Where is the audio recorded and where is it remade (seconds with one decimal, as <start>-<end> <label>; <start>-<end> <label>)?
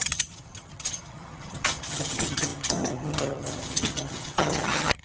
0.0-5.0 remade